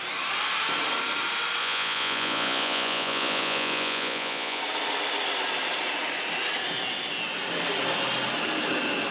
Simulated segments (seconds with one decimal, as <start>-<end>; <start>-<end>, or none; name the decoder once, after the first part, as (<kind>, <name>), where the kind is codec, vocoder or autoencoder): 1.6-4.6 (vocoder, Vocos)